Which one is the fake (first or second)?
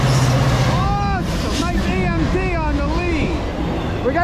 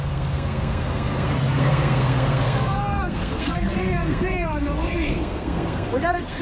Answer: second